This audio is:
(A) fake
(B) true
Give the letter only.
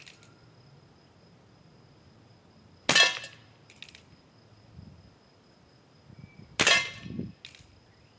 B